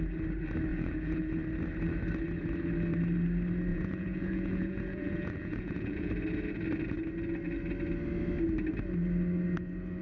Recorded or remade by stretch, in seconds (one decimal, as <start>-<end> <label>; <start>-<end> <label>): 0.0-0.7 recorded; 0.7-1.3 remade; 1.3-3.7 recorded; 3.7-6.1 remade; 6.1-10.0 recorded